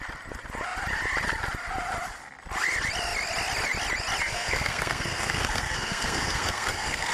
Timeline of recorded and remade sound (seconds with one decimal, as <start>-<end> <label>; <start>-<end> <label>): 0.0-4.2 recorded; 4.2-7.1 remade

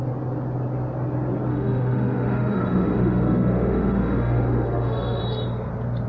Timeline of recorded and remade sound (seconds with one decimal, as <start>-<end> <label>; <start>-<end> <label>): 0.0-1.5 recorded; 1.5-5.2 remade; 5.2-6.1 recorded

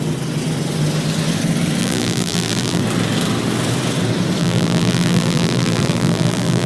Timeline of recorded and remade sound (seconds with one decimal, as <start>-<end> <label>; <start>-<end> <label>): 0.0-1.8 recorded; 1.8-2.8 remade; 2.8-4.4 recorded; 4.4-6.7 remade

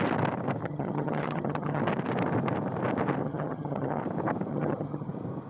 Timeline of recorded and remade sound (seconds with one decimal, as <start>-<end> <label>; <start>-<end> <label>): 0.0-0.6 recorded; 0.6-1.8 remade; 1.8-3.2 recorded; 3.2-4.0 remade; 4.0-4.5 recorded; 4.5-5.1 remade; 5.1-5.5 recorded

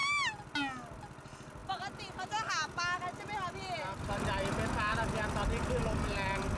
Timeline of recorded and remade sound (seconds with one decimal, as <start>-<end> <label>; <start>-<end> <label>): 0.0-6.6 recorded

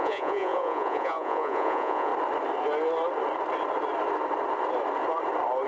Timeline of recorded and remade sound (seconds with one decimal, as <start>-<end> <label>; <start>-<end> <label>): 0.0-2.1 remade; 2.1-5.7 recorded

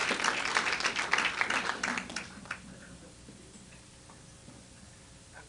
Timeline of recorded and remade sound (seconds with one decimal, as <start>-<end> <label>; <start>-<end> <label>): 0.0-4.4 recorded; 4.4-4.9 remade; 4.9-5.5 recorded

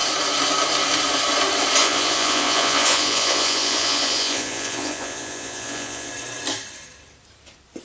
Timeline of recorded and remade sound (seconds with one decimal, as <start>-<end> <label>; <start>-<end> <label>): 0.0-1.8 recorded; 1.8-6.1 remade; 6.1-7.8 recorded